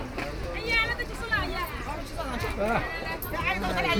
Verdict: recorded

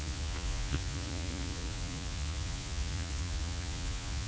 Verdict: remade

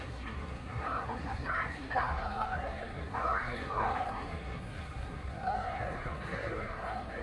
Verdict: remade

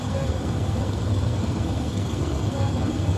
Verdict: remade